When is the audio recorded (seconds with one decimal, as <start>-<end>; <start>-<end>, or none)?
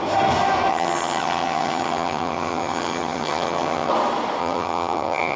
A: 0.0-0.7; 3.9-4.4